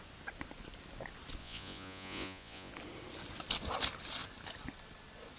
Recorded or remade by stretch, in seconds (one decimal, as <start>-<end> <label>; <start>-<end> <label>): 0.0-1.4 recorded; 1.4-2.7 remade; 2.7-5.4 recorded